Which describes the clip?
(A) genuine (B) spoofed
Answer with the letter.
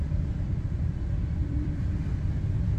B